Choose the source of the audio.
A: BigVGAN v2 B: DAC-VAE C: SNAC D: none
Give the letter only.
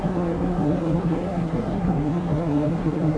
C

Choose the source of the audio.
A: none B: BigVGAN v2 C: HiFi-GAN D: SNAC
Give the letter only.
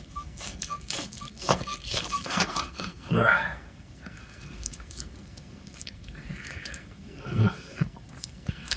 D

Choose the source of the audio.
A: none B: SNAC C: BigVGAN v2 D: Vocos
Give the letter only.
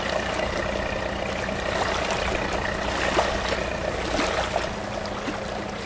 A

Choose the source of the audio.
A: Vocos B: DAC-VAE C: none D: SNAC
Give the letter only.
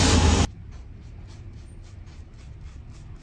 C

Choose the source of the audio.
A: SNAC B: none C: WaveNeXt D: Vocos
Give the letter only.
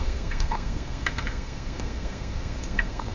A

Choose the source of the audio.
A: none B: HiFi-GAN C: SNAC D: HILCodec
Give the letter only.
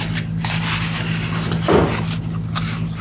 A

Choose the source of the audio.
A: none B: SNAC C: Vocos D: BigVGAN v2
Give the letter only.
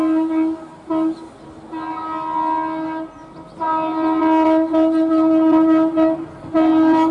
A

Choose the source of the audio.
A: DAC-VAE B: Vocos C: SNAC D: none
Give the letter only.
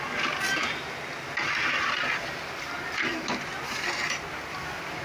D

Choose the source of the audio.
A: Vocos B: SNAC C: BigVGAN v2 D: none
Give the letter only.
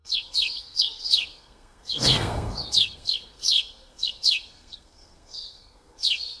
B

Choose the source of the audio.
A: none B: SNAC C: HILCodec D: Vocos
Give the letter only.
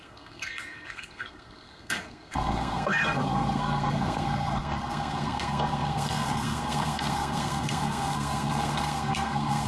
B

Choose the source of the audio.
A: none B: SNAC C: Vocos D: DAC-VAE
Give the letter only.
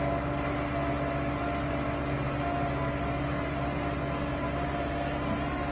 A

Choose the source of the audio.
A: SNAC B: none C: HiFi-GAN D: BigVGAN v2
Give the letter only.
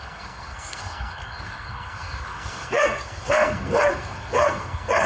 A